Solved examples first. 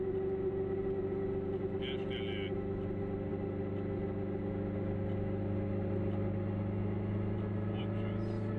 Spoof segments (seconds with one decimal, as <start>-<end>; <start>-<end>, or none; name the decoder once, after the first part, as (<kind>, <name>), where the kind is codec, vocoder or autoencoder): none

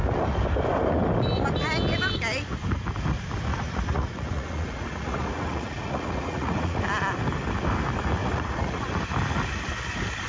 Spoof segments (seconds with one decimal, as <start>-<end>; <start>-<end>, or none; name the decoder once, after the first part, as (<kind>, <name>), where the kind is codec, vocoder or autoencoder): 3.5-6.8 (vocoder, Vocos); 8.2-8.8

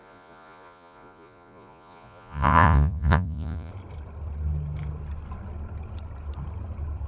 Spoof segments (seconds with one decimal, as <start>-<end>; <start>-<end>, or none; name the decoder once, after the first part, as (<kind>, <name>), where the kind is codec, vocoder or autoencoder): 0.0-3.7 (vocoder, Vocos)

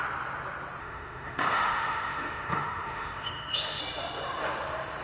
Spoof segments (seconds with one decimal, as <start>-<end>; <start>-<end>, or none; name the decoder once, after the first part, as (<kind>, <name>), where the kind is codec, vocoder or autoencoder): 0.8-3.8 (autoencoder, DAC-VAE)